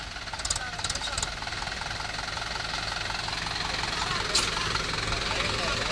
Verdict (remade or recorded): recorded